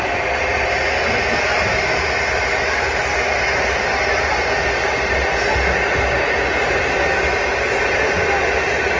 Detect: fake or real real